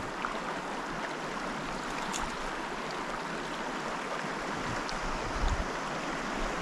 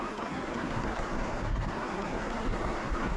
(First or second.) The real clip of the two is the first